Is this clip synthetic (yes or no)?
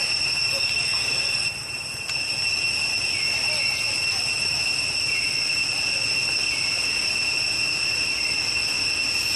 no